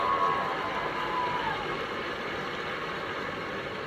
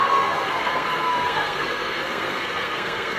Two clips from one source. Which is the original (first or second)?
first